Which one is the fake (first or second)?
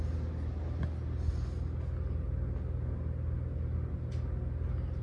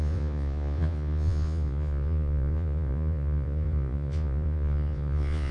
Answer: second